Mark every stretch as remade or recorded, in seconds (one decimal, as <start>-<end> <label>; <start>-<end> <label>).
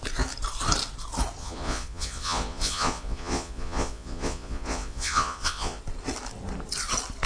0.0-1.4 recorded; 1.4-5.8 remade; 5.8-7.3 recorded